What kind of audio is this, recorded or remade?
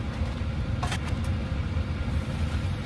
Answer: recorded